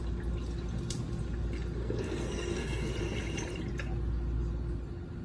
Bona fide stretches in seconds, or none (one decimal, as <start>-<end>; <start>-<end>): 0.0-1.8; 2.9-5.2